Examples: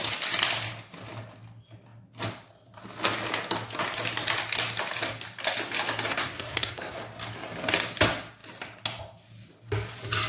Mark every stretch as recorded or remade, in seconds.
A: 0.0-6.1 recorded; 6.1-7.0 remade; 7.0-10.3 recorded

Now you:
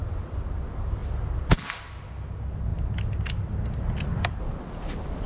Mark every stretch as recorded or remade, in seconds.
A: 0.0-5.3 recorded

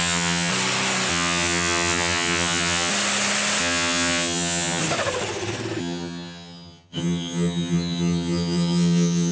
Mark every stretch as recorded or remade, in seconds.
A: 0.0-0.5 remade; 0.5-1.1 recorded; 1.1-2.9 remade; 2.9-3.6 recorded; 3.6-4.8 remade; 4.8-5.8 recorded; 5.8-9.3 remade

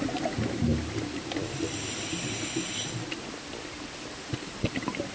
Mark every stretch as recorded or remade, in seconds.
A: 0.0-5.1 recorded

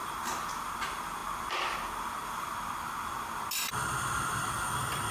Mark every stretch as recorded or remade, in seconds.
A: 0.0-0.6 remade; 0.6-5.1 recorded

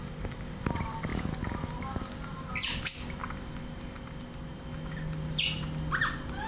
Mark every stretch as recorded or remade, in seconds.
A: 0.0-6.5 recorded

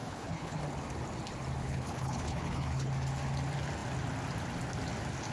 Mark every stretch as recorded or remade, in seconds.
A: 0.0-0.6 remade; 0.6-1.6 recorded; 1.6-2.9 remade; 2.9-5.3 recorded

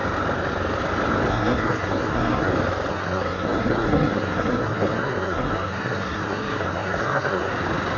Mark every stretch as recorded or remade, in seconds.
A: 0.0-1.3 recorded; 1.3-2.5 remade; 2.5-2.9 recorded; 2.9-7.5 remade; 7.5-8.0 recorded